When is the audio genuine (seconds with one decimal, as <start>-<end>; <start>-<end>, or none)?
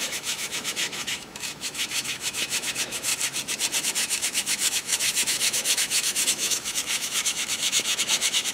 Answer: 3.1-3.8